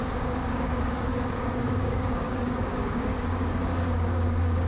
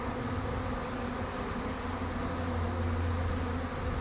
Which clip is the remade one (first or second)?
first